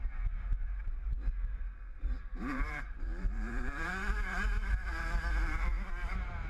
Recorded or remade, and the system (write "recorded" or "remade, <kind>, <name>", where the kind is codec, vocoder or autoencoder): remade, vocoder, BigVGAN v2